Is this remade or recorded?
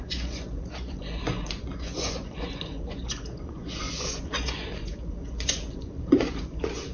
remade